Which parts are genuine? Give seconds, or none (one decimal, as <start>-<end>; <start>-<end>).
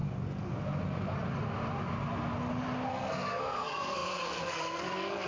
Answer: 0.0-2.9